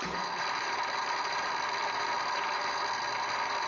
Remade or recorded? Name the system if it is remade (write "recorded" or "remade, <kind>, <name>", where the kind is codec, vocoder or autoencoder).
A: recorded